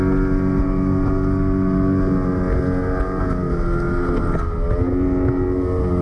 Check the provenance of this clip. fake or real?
real